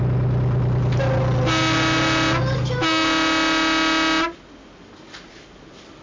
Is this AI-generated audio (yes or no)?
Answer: no